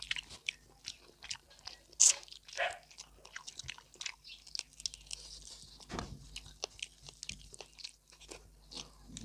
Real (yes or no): yes